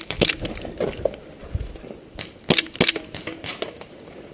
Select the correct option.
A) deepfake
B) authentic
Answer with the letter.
B